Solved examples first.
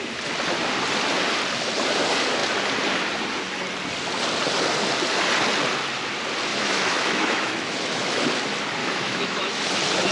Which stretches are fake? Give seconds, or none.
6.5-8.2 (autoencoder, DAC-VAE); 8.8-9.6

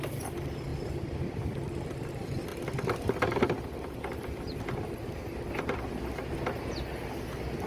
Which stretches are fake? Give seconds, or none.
none

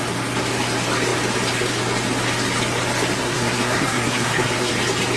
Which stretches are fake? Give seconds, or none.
3.2-4.7 (codec, SNAC)

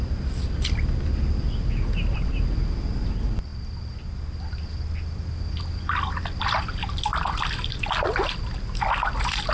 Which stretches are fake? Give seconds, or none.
none

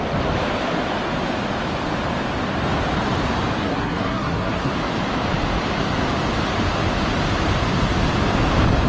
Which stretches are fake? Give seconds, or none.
3.6-4.7 (codec, SNAC)

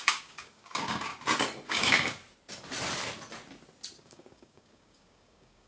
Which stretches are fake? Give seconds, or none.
0.0-1.1 (codec, DAC); 1.7-2.2; 4.0-5.7

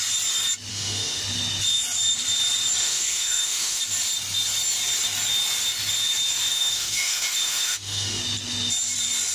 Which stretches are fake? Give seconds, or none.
0.7-1.2 (autoencoder, DAC-VAE); 2.8-3.8; 6.5-8.2